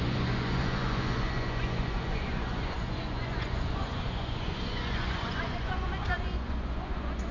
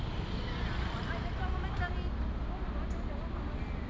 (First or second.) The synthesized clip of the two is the first